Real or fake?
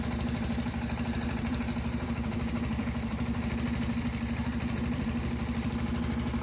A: fake